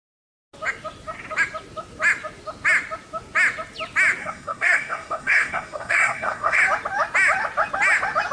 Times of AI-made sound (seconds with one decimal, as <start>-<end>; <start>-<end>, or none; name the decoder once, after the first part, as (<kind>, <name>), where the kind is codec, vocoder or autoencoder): 4.2-6.6 (codec, SNAC)